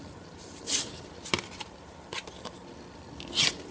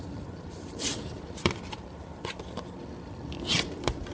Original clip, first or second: first